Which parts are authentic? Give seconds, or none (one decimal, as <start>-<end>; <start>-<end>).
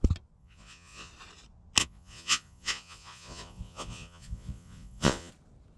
0.0-0.4; 1.1-1.8; 5.3-5.8